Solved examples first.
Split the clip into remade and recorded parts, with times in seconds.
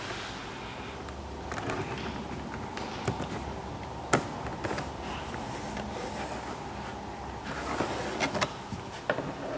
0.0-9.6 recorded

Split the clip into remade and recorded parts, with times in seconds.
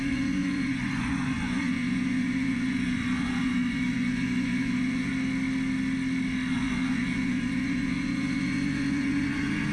0.0-5.1 remade; 5.1-6.5 recorded; 6.5-9.7 remade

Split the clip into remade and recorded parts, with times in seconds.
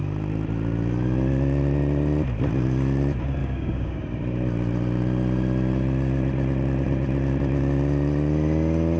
0.0-3.4 recorded; 3.4-4.0 remade; 4.0-9.0 recorded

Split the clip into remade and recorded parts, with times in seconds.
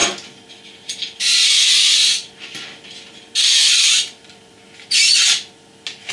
0.0-6.1 recorded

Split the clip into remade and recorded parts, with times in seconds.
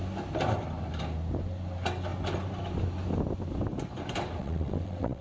0.0-4.4 recorded; 4.4-5.2 remade